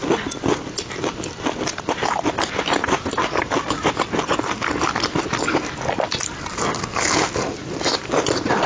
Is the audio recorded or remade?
recorded